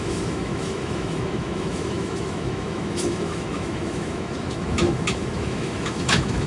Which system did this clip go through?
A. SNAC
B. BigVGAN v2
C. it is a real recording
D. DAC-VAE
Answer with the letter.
D